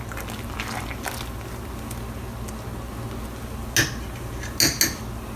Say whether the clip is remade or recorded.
recorded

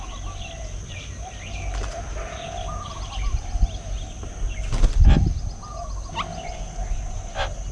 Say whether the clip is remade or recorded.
recorded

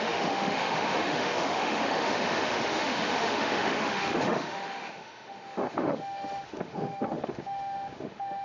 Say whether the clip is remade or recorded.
remade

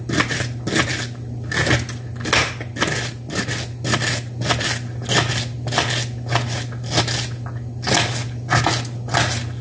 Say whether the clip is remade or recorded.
recorded